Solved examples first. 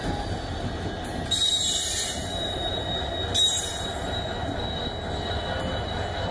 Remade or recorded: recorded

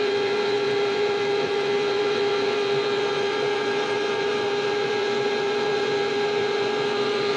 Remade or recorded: remade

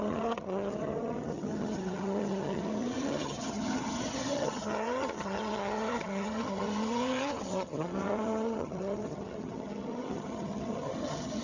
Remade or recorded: remade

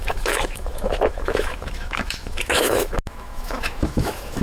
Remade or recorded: remade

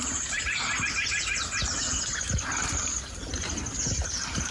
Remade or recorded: recorded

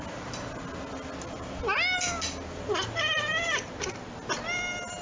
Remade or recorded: recorded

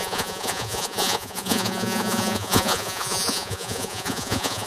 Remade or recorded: remade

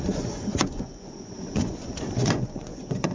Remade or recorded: remade